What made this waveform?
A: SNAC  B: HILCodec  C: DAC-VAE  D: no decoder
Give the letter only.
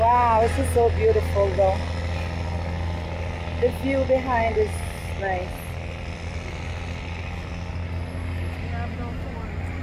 D